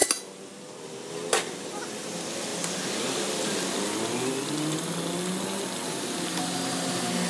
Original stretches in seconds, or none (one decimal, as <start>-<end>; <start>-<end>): 0.0-7.3

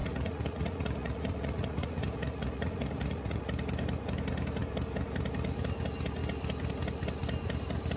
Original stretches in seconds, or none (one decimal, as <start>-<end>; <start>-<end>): 3.4-8.0

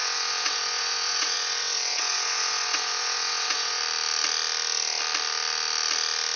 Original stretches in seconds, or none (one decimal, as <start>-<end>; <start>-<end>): 3.8-6.4

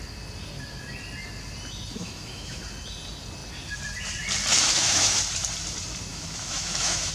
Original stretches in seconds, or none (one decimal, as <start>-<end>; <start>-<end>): 0.0-1.9; 2.6-4.5; 5.2-6.1